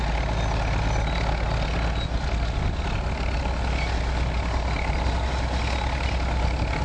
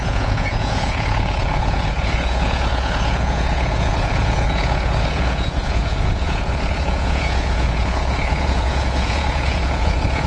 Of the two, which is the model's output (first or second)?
second